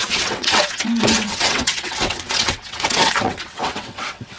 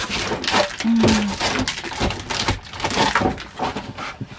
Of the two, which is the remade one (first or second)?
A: first